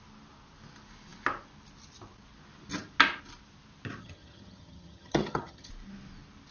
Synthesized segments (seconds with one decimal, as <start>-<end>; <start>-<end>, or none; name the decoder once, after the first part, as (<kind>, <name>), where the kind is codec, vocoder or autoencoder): 4.0-5.7 (vocoder, HiFi-GAN)